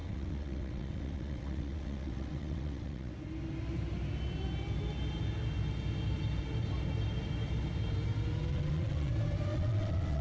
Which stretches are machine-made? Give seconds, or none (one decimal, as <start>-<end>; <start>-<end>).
0.0-3.1; 8.5-9.1; 9.5-10.2